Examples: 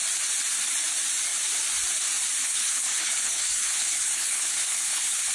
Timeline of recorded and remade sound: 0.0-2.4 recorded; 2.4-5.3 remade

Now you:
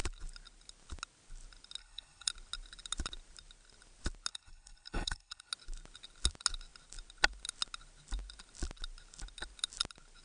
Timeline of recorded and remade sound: 0.0-1.8 recorded; 1.8-2.3 remade; 2.3-4.3 recorded; 4.3-5.5 remade; 5.5-10.2 recorded

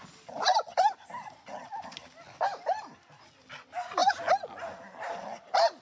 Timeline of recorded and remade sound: 0.0-5.8 recorded

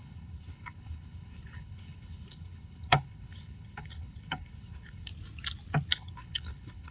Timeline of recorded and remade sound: 0.0-5.1 remade; 5.1-5.9 recorded; 5.9-6.9 remade

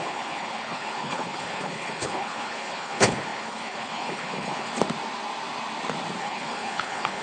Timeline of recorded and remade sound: 0.0-4.7 remade; 4.7-6.2 recorded; 6.2-7.2 remade